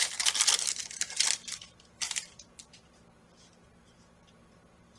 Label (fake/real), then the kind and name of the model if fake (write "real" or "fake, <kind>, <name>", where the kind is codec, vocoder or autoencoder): real